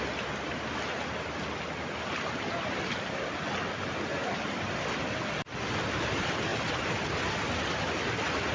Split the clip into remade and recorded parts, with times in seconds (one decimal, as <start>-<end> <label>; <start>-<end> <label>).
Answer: 0.0-8.5 recorded